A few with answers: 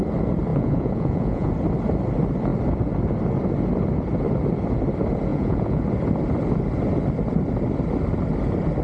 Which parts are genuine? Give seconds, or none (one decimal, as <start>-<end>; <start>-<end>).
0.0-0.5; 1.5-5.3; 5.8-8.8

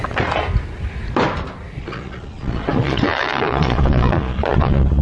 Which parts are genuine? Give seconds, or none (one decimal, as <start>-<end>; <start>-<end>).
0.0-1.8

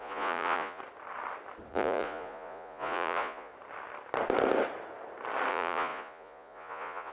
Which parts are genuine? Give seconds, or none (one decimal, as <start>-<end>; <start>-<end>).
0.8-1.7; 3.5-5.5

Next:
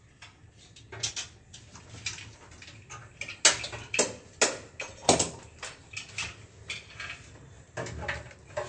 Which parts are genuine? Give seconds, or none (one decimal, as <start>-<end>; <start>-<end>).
0.0-8.7

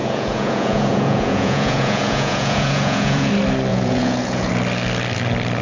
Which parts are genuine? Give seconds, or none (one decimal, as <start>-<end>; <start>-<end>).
3.3-3.7; 4.5-5.6

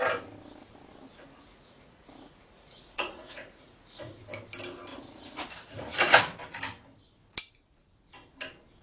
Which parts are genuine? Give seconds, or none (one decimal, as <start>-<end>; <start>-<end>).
0.0-1.2; 4.2-4.9; 6.6-8.8

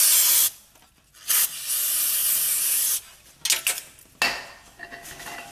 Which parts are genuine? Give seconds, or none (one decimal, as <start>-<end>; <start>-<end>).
0.0-5.5

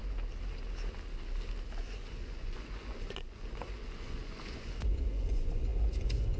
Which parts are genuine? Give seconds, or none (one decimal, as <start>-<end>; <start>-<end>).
0.0-1.8